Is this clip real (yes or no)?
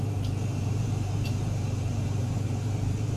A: no